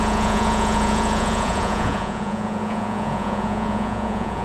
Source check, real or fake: fake